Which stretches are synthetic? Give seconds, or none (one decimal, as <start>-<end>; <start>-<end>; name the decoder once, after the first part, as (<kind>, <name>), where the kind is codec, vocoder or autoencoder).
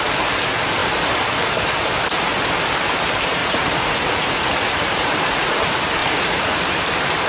3.4-5.6 (vocoder, Vocos); 6.0-6.6